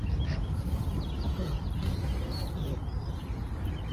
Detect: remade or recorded recorded